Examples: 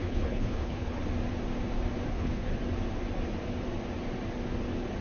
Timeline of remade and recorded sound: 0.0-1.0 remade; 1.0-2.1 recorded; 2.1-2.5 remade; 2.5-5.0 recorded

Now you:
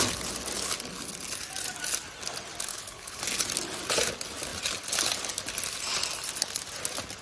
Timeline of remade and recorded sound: 0.0-2.7 recorded; 2.7-3.2 remade; 3.2-7.2 recorded